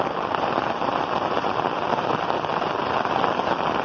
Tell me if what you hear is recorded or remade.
recorded